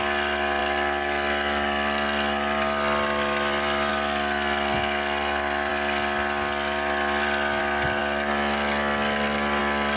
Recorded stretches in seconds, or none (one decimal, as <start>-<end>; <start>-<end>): 0.0-10.0